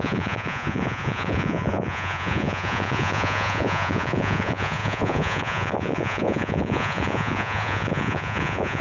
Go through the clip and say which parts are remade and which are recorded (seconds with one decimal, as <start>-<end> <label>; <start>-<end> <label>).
0.0-8.8 remade